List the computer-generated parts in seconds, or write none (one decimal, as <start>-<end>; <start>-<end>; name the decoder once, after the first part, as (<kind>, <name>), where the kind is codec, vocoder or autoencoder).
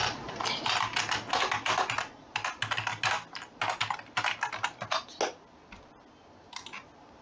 none